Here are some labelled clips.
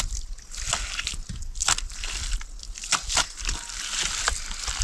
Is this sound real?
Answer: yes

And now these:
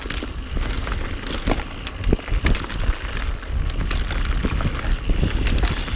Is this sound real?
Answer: yes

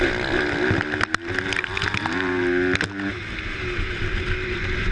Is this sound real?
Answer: yes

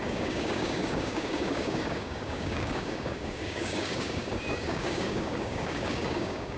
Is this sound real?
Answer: no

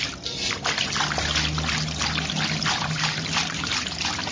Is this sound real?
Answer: yes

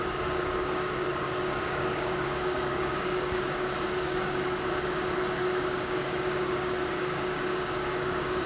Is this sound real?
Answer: no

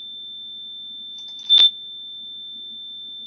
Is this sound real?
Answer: yes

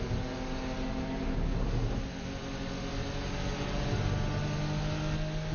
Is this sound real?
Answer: yes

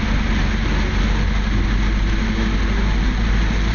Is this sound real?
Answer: yes